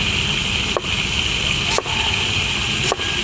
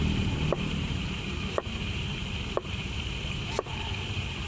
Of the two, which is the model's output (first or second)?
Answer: second